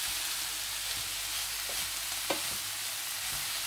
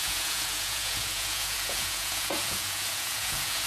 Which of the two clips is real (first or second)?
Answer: first